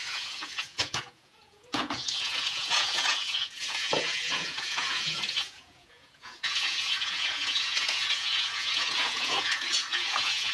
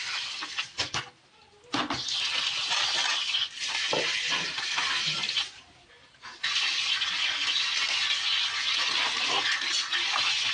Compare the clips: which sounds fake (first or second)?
first